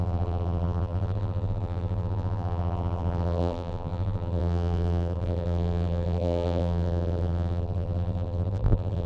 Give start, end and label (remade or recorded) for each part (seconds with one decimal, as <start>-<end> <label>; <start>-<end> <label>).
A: 0.0-9.1 remade